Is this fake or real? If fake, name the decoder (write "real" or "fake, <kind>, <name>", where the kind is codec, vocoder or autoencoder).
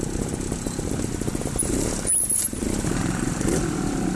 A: fake, vocoder, BigVGAN v2